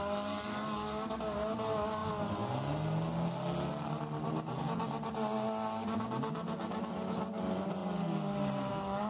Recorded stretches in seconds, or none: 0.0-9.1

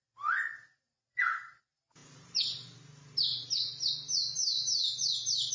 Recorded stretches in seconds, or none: 0.0-1.1; 1.6-5.5

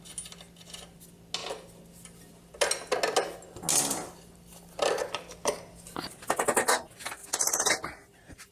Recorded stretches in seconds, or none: 0.0-3.9; 5.0-8.5

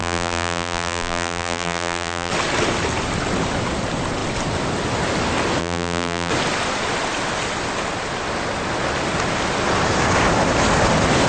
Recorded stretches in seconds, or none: 2.3-5.6; 6.3-11.3

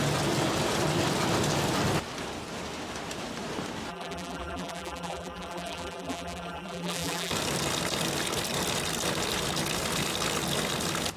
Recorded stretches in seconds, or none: 0.0-3.9; 7.3-11.2

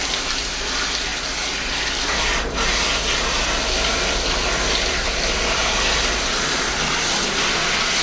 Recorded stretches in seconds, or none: 0.0-1.1; 5.8-8.0

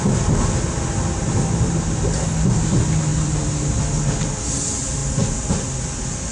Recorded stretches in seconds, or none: 0.0-3.1; 3.7-6.3

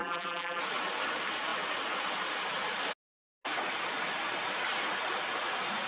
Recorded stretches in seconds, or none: 0.6-5.9